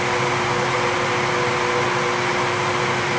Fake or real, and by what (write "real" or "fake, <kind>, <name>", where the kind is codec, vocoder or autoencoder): real